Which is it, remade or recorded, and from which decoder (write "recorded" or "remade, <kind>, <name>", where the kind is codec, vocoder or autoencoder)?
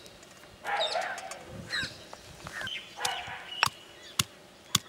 recorded